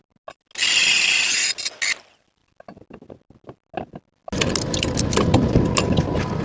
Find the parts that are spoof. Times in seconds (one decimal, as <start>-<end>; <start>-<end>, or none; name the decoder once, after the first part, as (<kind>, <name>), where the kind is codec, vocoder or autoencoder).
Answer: 0.8-1.5 (vocoder, Vocos)